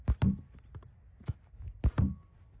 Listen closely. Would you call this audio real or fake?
real